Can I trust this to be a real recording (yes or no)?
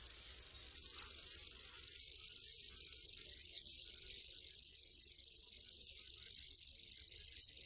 yes